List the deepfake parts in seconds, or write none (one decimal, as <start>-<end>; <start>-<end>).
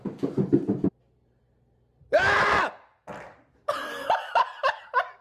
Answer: none